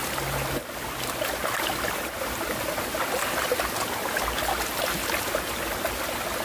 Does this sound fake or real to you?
real